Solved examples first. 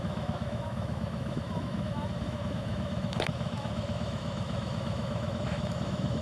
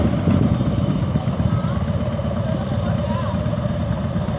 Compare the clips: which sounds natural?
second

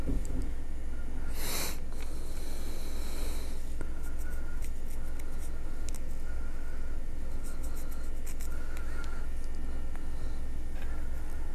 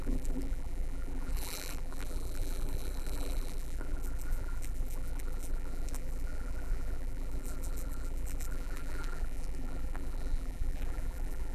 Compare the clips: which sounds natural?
first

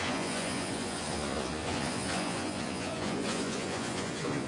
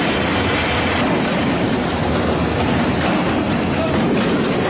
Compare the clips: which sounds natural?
second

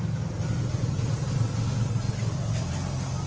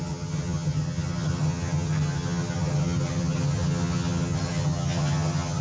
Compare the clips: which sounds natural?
first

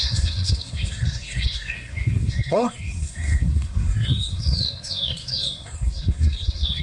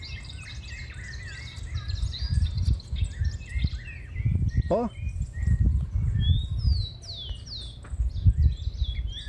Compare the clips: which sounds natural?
second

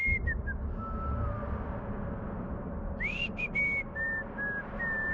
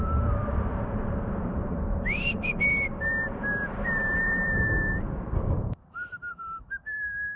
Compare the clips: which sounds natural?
first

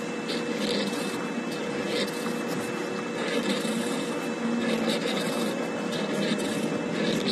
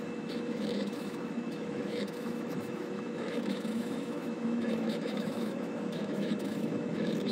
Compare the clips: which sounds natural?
first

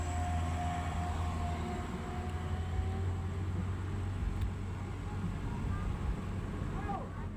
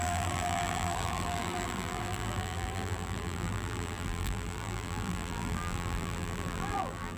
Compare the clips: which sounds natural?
first